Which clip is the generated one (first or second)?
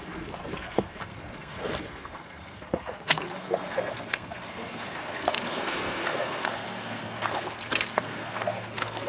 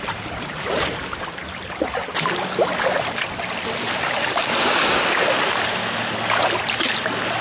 first